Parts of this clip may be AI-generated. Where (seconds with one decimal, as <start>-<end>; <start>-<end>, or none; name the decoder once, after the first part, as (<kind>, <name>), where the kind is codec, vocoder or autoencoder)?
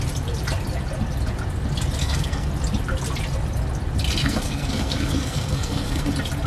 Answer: 2.0-2.5 (codec, SNAC); 4.2-6.1